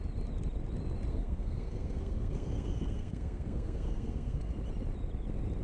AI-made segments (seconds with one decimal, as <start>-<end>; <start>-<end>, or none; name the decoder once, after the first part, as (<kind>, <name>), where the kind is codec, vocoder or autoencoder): 1.1-4.5 (codec, SNAC)